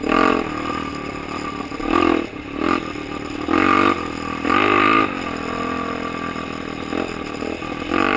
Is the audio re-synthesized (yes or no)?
no